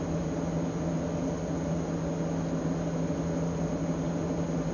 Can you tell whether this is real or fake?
real